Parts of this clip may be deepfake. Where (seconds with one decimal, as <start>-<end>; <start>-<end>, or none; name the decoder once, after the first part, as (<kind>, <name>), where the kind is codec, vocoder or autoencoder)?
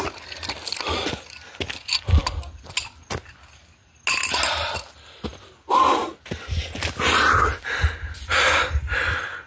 none